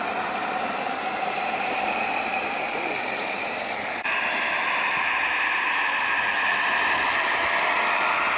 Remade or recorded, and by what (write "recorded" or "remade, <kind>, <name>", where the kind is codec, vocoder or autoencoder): remade, vocoder, BigVGAN v2